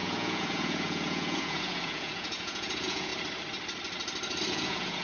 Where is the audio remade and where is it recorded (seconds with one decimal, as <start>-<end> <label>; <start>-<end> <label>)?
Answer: 0.0-3.1 remade; 3.1-4.5 recorded; 4.5-5.0 remade